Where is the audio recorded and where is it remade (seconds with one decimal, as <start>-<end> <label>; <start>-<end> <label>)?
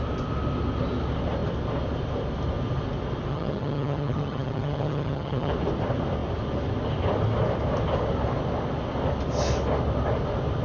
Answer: 0.0-3.3 recorded; 3.3-5.5 remade; 5.5-10.6 recorded